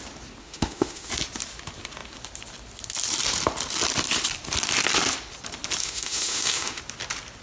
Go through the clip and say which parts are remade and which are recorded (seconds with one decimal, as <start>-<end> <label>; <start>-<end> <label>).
0.0-0.4 recorded; 0.4-1.1 remade; 1.1-5.8 recorded; 5.8-6.8 remade; 6.8-7.4 recorded